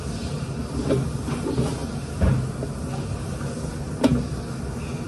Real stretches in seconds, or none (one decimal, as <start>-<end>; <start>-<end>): 0.0-5.1

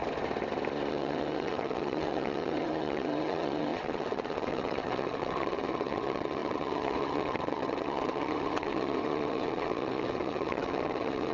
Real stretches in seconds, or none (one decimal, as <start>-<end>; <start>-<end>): 0.0-0.9

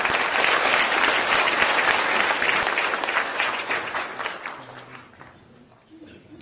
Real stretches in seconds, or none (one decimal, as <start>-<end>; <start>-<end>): 0.0-3.3; 4.0-6.4

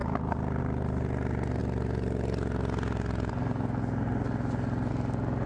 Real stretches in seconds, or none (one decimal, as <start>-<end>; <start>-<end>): 0.0-5.5

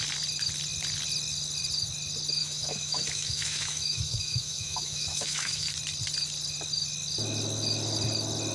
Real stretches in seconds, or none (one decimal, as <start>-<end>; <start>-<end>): 0.0-2.4; 5.7-8.5